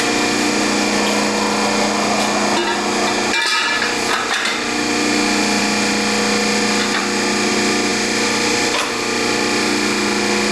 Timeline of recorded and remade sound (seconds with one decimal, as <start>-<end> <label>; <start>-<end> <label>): 0.0-10.5 recorded